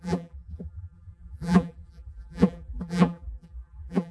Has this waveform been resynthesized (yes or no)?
yes